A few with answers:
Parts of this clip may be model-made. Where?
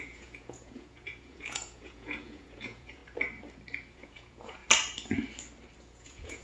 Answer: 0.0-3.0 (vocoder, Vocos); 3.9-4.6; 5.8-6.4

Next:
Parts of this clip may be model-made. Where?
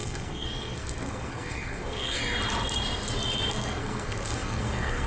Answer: 0.0-2.2 (codec, SNAC); 3.5-5.1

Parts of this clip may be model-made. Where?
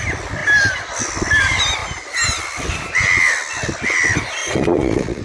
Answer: 4.4-5.2 (vocoder, Vocos)